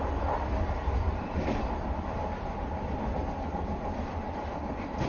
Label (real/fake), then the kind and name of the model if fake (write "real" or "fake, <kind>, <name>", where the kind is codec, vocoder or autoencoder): fake, vocoder, BigVGAN v2